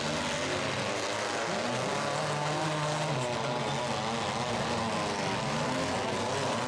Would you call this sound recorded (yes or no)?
yes